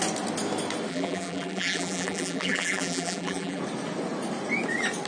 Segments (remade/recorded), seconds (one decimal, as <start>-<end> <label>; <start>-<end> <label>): 0.0-0.9 recorded; 0.9-3.6 remade; 3.6-5.1 recorded